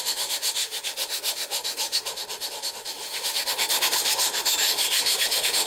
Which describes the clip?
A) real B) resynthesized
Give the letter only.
B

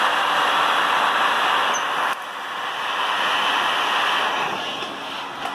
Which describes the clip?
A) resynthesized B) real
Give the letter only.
B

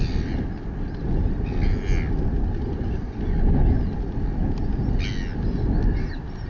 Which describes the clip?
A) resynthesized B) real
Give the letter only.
B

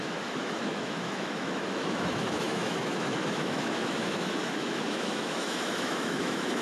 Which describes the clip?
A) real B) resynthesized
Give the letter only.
B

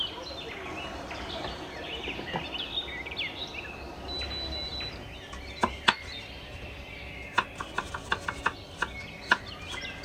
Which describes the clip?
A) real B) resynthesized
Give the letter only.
A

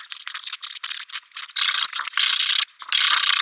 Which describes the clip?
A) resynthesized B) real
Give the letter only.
B